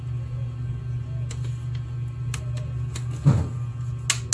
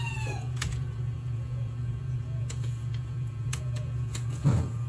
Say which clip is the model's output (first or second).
second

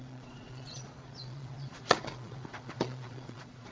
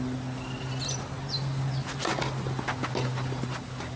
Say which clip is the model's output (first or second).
first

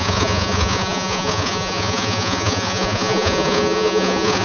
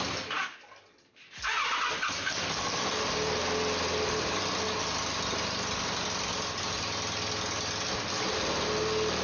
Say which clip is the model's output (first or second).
first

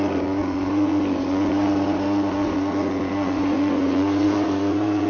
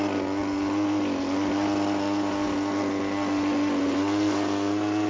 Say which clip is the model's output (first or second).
first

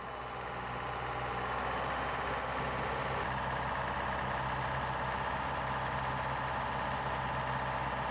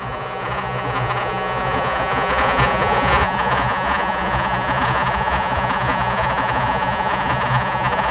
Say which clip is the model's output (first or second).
second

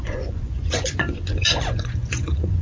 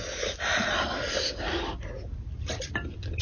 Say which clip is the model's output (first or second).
first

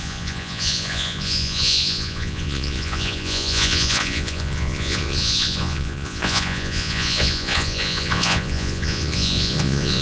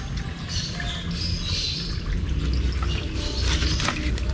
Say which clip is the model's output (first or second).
first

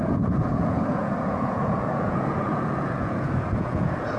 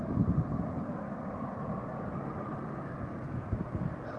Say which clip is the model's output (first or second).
first